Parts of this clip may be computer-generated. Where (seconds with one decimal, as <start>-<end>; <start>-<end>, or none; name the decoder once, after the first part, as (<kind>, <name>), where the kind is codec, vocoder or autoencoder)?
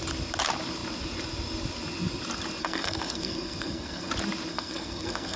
2.6-4.1 (codec, SNAC); 4.5-5.4